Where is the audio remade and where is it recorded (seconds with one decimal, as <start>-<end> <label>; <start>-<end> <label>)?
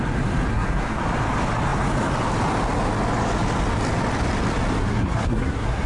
0.0-0.5 recorded; 0.5-1.0 remade; 1.0-4.8 recorded; 4.8-5.9 remade